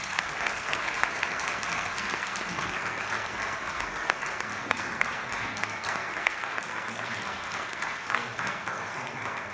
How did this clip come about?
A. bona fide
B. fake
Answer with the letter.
B